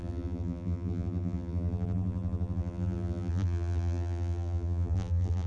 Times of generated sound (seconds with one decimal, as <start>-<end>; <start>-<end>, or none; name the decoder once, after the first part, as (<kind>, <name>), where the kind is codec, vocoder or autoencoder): 0.0-5.5 (vocoder, BigVGAN v2)